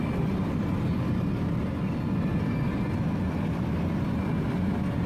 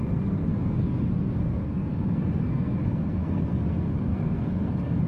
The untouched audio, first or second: first